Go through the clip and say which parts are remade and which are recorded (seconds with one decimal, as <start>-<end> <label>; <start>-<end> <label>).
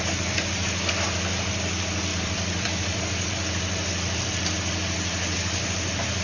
0.0-2.1 recorded; 2.1-3.3 remade; 3.3-6.2 recorded